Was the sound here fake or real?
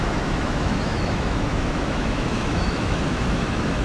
fake